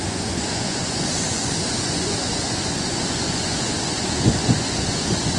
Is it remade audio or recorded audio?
remade